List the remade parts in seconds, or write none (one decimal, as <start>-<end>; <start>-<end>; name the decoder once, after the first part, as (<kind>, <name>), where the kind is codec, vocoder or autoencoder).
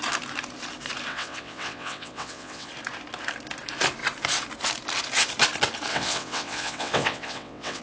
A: 1.1-2.7 (vocoder, WaveNeXt); 5.9-7.8